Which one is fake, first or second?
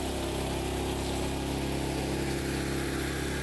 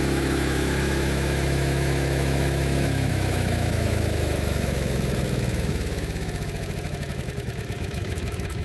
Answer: second